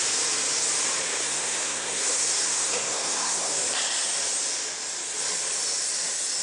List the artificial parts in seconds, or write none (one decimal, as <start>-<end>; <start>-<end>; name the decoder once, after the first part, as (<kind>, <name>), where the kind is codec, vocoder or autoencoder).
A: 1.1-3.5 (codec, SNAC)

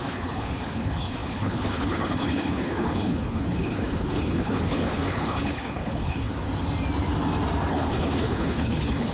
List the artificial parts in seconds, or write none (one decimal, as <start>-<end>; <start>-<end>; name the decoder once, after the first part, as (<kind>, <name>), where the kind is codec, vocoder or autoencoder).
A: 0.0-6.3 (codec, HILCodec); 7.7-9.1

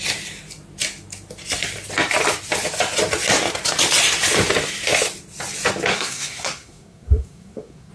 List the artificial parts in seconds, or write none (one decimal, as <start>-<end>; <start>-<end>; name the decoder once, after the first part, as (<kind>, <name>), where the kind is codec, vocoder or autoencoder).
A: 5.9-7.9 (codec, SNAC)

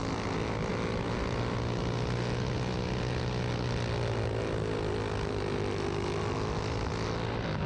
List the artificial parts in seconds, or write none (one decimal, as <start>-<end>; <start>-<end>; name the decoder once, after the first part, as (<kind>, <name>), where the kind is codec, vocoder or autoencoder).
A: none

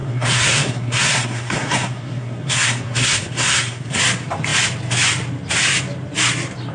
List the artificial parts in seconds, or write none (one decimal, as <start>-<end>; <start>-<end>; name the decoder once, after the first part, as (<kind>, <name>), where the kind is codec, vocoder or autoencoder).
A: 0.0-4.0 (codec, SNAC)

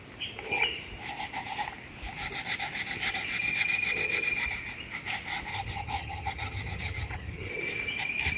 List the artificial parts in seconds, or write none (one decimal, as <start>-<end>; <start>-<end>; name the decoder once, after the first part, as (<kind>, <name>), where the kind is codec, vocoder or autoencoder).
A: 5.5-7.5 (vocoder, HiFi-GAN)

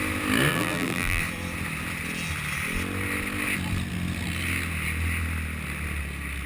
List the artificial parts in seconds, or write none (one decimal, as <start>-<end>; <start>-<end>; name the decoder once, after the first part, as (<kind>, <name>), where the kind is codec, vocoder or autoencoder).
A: 0.5-1.2 (vocoder, BigVGAN v2)

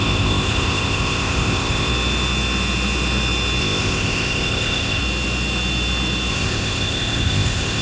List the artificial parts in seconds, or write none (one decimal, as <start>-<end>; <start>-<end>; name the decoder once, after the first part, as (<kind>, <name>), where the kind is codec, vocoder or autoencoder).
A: 0.0-1.9 (codec, ZipCodec); 3.6-5.0; 6.3-7.8